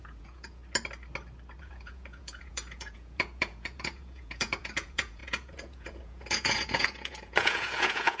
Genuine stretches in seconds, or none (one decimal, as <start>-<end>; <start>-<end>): 0.6-1.6